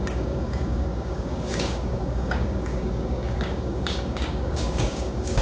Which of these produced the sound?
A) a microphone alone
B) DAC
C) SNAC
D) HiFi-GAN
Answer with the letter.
B